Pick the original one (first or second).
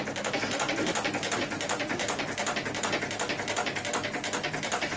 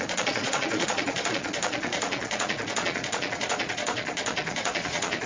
first